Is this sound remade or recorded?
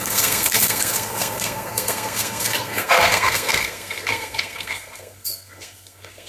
remade